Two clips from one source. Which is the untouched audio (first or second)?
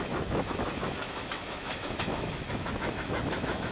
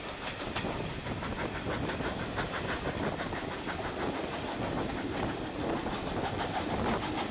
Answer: second